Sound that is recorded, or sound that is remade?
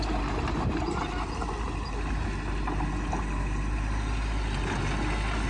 recorded